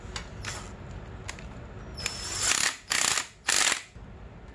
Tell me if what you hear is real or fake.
real